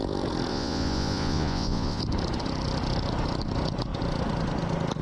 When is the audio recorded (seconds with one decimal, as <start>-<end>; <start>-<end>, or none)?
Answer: 0.0-0.5; 2.0-5.0